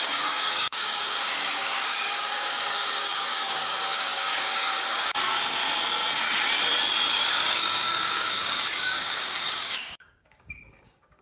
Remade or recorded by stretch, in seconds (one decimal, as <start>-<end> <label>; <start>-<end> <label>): 0.0-5.6 remade; 5.6-7.1 recorded; 7.1-11.2 remade